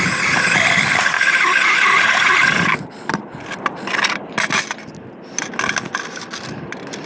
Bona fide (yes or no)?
yes